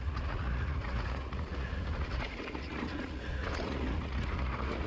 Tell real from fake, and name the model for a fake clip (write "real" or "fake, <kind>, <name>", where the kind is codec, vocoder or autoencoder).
fake, vocoder, Vocos